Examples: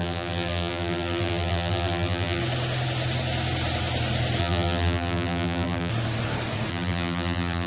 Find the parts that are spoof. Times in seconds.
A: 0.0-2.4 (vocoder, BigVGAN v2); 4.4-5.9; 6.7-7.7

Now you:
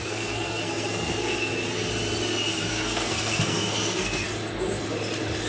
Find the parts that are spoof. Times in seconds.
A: 0.0-1.5 (codec, SNAC); 2.7-4.3

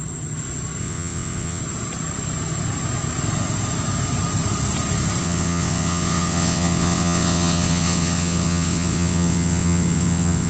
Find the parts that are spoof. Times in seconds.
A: 0.8-1.6 (vocoder, WaveNeXt); 5.2-10.5

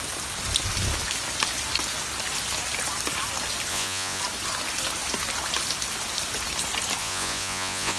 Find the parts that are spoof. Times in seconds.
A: 3.7-4.2 (vocoder, Vocos); 7.0-8.0